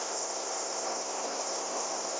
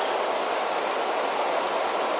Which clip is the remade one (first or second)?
first